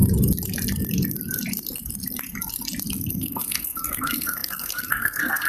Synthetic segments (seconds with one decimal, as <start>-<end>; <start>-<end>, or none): 3.1-5.5